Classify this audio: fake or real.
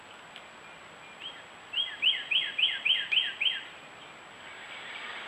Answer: real